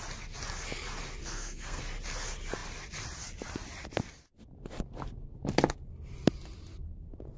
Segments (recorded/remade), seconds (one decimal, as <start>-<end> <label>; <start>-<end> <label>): 0.0-1.2 recorded; 1.2-1.8 remade; 1.8-7.4 recorded